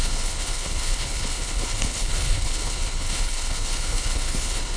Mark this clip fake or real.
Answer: fake